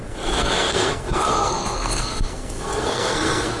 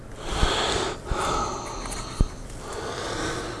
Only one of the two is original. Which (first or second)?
second